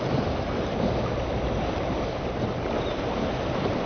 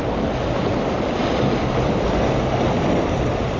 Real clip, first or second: second